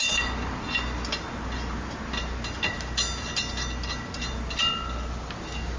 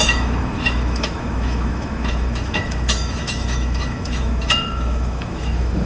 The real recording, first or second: first